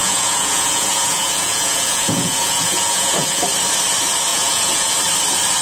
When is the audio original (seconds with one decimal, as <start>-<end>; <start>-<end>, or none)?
3.4-4.3; 4.9-5.6